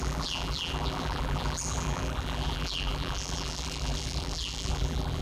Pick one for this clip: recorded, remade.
remade